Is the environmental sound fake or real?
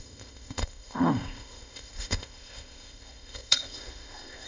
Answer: fake